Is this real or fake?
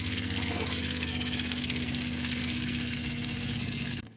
fake